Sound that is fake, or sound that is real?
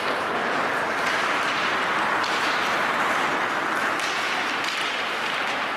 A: real